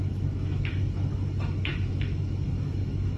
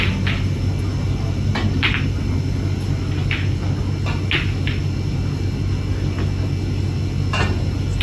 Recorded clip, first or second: second